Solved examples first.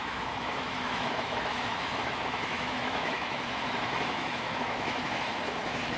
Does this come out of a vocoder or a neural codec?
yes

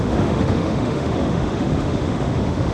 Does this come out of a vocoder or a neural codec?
yes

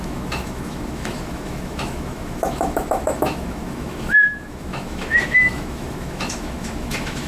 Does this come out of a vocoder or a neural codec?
yes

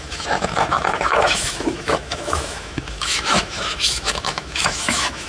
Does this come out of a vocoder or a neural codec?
yes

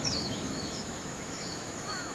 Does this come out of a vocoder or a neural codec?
yes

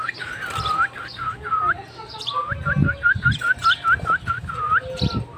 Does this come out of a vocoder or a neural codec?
no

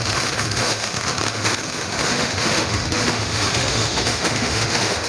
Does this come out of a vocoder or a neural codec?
yes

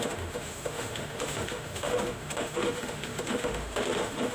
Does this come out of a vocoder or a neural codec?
yes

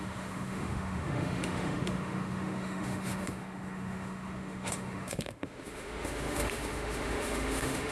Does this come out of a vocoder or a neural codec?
yes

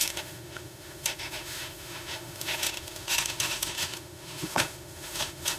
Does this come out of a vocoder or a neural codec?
yes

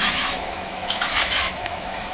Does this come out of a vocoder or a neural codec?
yes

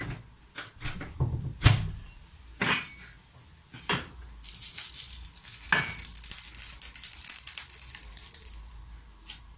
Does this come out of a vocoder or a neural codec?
no